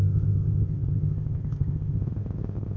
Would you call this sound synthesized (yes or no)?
yes